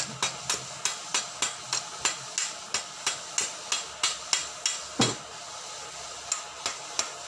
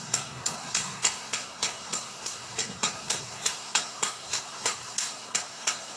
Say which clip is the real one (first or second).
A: first